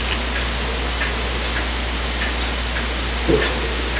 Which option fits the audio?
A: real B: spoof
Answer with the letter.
A